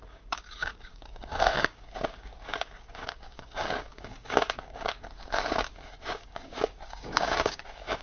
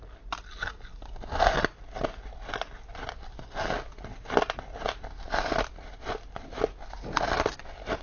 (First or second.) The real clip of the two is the second